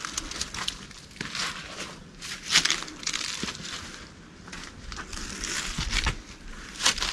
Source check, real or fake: real